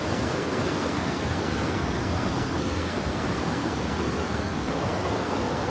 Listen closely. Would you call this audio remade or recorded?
remade